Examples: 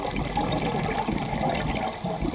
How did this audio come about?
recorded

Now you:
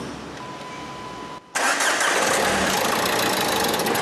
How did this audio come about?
recorded